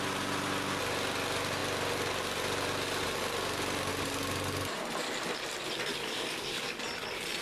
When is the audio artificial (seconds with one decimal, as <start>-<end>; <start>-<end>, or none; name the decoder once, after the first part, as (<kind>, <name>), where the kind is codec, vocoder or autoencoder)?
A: 5.9-6.8 (codec, DAC)